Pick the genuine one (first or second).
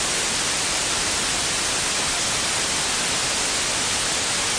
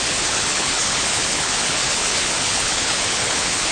first